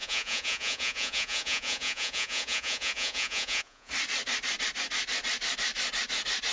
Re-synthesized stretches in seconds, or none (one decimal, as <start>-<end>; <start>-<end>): 0.0-3.9